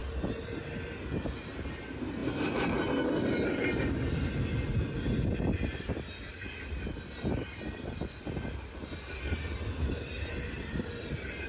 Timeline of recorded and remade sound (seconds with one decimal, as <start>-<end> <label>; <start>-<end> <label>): 0.0-8.8 recorded; 8.8-10.8 remade; 10.8-11.5 recorded

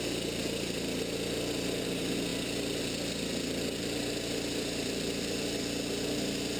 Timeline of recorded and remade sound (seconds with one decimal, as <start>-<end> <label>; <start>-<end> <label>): 0.0-2.3 recorded; 2.3-6.6 remade